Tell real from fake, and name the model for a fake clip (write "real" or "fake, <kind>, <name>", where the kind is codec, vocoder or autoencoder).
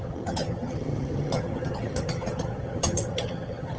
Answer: fake, vocoder, HiFi-GAN